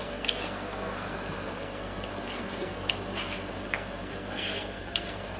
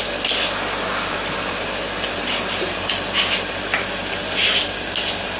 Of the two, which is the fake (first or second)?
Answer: first